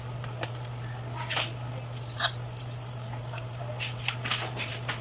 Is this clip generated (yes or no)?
no